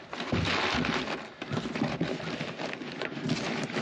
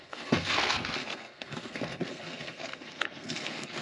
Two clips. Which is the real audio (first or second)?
first